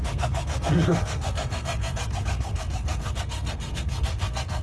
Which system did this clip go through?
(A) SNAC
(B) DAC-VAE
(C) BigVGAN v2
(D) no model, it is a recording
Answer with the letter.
A